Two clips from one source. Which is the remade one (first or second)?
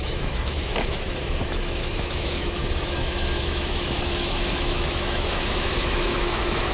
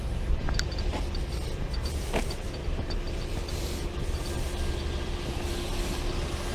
first